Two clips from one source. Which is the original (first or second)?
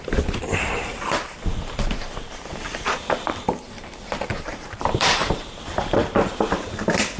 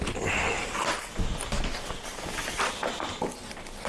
second